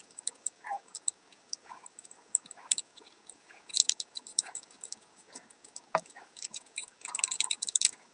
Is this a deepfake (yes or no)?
yes